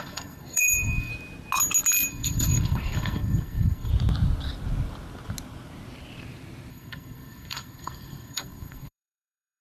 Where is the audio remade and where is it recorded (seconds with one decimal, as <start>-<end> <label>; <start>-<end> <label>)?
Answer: 0.0-1.1 remade; 1.1-2.1 recorded; 2.1-3.9 remade; 3.9-6.7 recorded; 6.7-9.6 remade